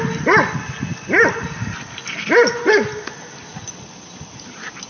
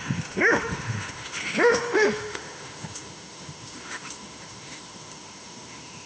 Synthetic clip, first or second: second